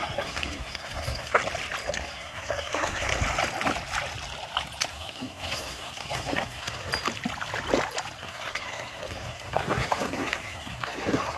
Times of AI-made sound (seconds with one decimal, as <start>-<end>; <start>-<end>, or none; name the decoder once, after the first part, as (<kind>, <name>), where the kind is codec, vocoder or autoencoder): 0.0-1.4 (codec, SNAC); 1.9-3.1; 4.9-6.9; 8.2-11.4